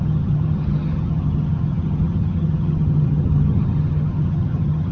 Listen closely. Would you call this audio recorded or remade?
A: remade